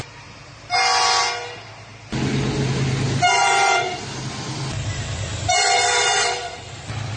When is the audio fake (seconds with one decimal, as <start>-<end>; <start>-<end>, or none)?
none